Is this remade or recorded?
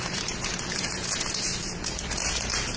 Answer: remade